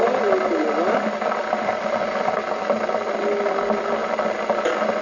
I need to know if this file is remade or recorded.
recorded